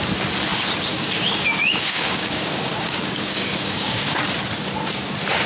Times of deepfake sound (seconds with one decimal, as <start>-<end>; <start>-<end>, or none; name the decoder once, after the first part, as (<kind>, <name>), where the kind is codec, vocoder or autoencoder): 0.9-4.2 (codec, DAC)